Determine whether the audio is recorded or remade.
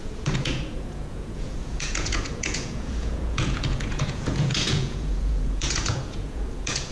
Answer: remade